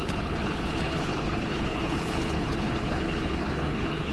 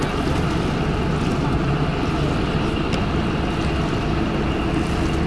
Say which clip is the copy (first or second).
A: first